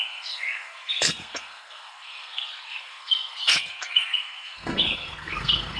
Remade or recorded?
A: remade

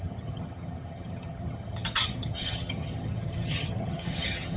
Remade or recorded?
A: remade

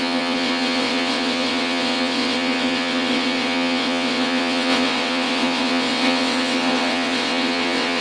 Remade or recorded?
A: remade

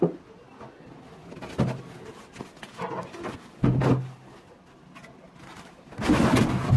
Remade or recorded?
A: recorded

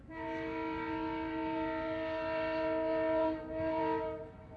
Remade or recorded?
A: remade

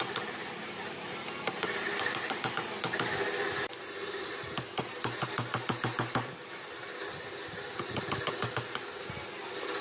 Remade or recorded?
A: recorded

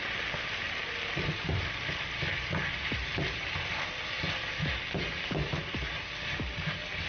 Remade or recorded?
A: recorded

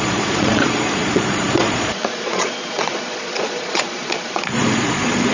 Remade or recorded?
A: remade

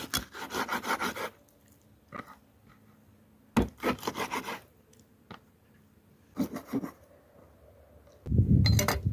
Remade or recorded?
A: recorded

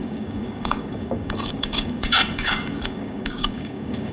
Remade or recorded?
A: remade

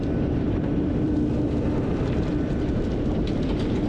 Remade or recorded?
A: remade